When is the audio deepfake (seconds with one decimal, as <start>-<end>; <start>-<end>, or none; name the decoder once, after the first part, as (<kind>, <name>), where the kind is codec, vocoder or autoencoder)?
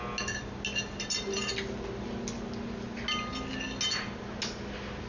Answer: none